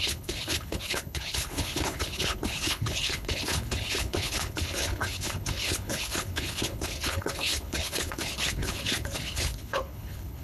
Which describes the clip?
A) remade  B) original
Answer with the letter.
A